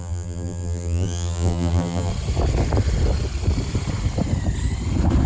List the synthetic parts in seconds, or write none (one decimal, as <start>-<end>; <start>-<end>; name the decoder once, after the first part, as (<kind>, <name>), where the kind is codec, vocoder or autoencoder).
0.0-2.1 (vocoder, BigVGAN v2)